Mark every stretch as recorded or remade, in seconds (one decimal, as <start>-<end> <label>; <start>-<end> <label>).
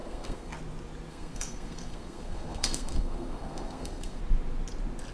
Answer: 0.0-0.5 remade; 0.5-1.1 recorded; 1.1-4.2 remade; 4.2-5.1 recorded